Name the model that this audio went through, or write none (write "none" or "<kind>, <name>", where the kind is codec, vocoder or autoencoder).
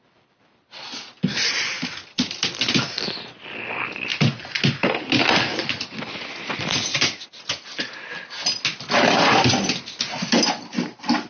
none